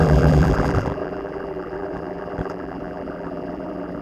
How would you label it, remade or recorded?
remade